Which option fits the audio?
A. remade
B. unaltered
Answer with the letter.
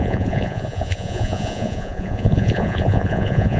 A